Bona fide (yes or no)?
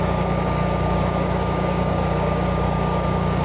no